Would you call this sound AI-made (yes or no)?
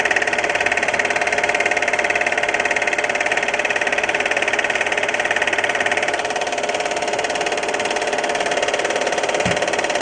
yes